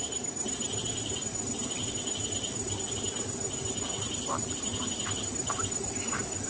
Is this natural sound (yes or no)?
yes